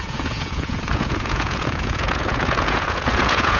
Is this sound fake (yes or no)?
yes